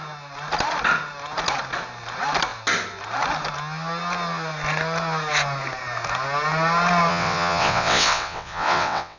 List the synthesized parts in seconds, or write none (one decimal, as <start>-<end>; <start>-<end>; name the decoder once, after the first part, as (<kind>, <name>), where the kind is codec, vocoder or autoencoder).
7.1-9.2 (vocoder, WaveNeXt)